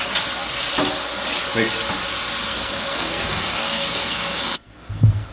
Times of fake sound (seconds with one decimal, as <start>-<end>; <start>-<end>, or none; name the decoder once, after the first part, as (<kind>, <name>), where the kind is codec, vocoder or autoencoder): 2.4-5.3 (codec, SNAC)